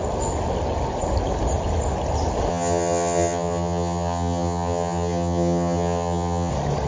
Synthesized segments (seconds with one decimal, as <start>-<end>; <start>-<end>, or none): 2.5-6.5